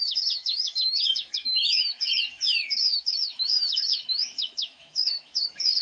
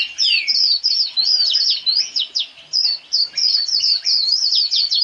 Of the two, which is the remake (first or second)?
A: first